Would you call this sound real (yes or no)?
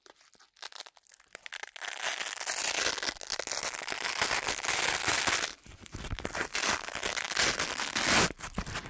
yes